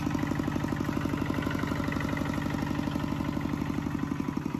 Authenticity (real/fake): real